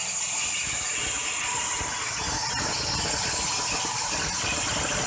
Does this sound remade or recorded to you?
recorded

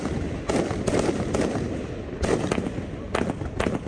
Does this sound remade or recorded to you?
recorded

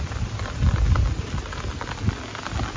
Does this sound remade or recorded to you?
recorded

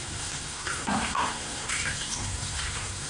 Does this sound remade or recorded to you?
remade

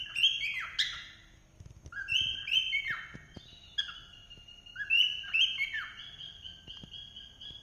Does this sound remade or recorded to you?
recorded